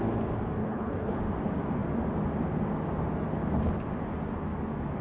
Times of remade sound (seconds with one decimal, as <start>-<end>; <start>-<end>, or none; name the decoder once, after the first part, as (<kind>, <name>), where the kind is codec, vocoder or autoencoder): 0.6-1.2 (codec, HILCodec)